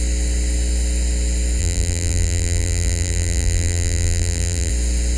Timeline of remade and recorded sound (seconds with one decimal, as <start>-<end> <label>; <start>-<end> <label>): 0.0-1.6 recorded; 1.6-4.7 remade; 4.7-5.2 recorded